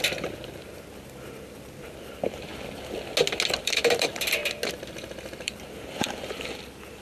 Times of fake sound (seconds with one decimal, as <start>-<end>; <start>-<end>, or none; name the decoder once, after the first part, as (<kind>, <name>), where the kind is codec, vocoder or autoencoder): 0.0-2.5 (vocoder, BigVGAN v2); 3.5-4.4; 4.9-7.0